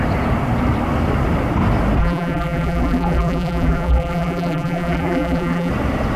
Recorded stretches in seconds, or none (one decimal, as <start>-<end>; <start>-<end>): 0.0-2.0; 5.7-6.2